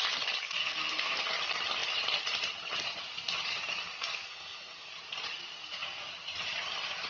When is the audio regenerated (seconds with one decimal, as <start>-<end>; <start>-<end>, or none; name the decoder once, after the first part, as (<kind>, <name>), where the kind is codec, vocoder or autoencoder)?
0.6-1.2 (codec, SNAC); 4.3-4.9